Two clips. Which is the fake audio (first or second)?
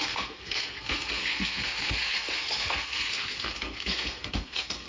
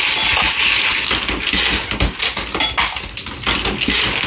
first